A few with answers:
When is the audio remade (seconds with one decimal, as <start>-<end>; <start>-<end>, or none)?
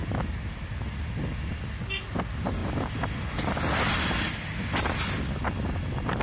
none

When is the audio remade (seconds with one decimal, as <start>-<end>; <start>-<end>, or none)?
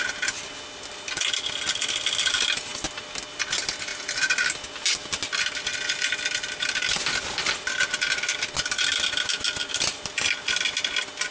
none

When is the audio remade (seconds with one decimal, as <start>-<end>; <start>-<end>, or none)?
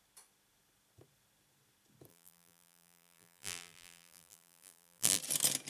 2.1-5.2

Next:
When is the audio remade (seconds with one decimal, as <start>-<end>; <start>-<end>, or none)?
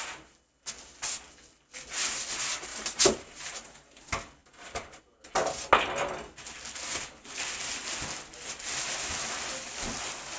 2.7-4.0; 4.4-5.0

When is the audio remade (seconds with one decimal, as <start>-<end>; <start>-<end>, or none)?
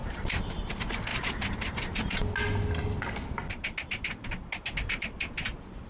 none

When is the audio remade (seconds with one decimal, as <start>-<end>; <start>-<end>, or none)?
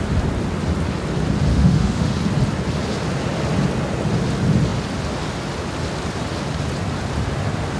1.5-2.2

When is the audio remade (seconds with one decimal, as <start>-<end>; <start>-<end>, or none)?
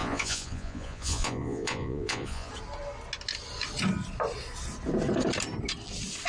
0.0-2.5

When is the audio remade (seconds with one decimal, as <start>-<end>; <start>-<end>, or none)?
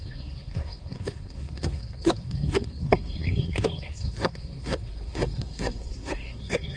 0.0-6.8